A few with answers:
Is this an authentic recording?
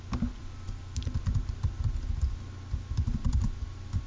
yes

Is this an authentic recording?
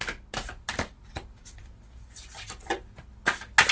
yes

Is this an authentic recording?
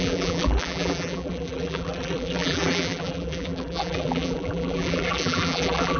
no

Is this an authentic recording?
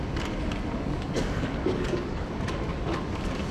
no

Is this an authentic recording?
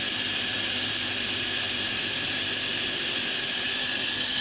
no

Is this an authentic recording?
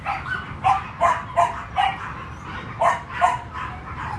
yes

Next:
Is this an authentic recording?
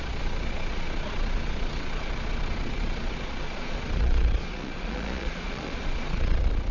no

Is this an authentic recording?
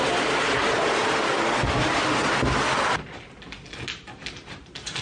yes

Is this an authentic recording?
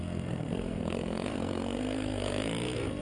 no